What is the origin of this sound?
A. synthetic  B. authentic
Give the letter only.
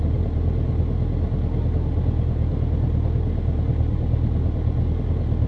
B